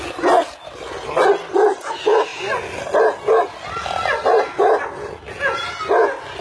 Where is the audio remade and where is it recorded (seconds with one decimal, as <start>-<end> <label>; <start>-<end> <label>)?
0.0-6.4 recorded